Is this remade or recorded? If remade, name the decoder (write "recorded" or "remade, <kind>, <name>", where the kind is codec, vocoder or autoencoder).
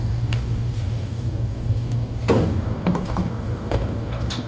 remade, codec, DAC